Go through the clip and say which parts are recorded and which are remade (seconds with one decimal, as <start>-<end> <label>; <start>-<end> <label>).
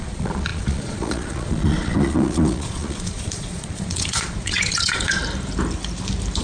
0.0-5.2 remade; 5.2-6.4 recorded